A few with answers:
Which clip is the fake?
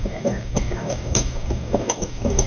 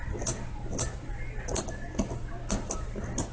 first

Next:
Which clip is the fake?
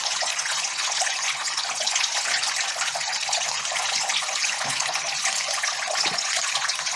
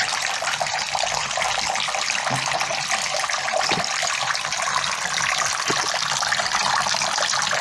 first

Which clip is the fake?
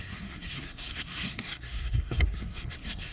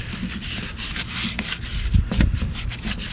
first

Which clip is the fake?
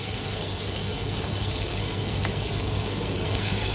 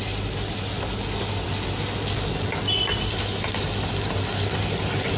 first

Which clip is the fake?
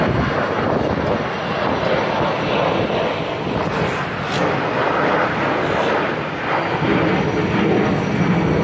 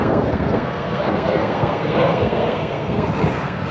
second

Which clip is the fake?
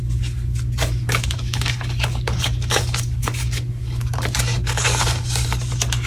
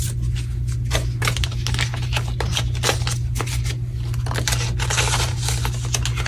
first